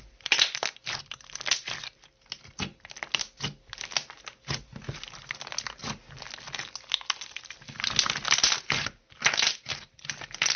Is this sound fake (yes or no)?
no